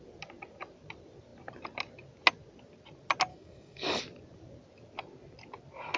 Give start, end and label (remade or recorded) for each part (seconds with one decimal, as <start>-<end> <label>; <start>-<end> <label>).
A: 0.0-3.3 recorded; 3.3-4.0 remade; 4.0-6.0 recorded